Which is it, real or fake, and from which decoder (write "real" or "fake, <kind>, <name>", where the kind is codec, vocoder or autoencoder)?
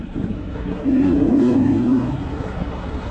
fake, codec, SNAC